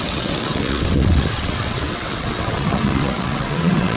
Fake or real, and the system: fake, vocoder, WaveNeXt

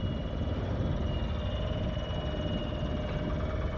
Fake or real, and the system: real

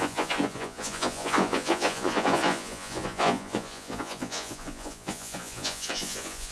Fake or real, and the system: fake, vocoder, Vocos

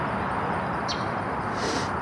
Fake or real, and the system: real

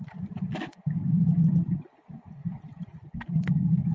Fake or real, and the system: real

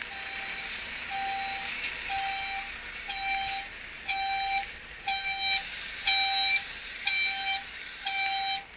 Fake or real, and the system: real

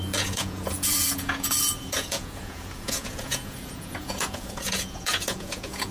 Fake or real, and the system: fake, vocoder, Vocos